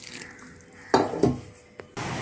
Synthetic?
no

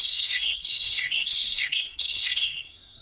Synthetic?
yes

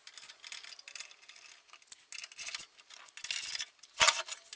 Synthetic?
no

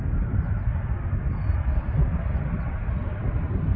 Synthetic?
no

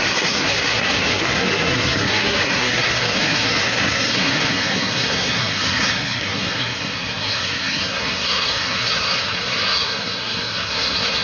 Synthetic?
yes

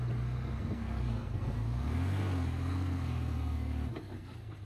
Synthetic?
yes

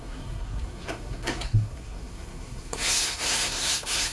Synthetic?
yes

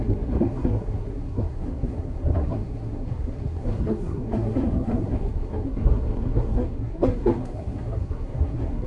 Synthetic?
yes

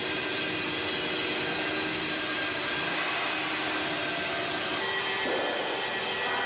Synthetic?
no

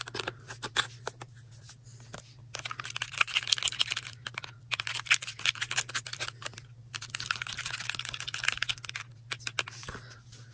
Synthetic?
no